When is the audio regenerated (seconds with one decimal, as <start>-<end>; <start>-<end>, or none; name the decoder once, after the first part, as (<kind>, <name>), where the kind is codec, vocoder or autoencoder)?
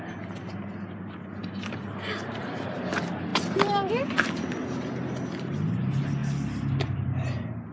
1.4-2.9 (vocoder, BigVGAN v2)